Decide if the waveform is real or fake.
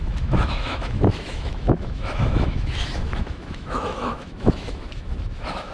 fake